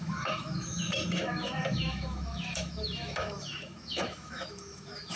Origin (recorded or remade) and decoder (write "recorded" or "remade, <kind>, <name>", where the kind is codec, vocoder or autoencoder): remade, autoencoder, DAC-VAE